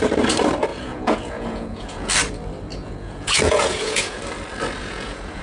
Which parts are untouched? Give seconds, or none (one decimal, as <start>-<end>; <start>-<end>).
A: 0.0-0.7; 2.1-2.7; 4.2-4.8